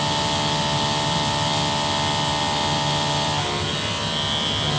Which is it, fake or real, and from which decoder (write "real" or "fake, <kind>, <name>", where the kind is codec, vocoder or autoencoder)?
real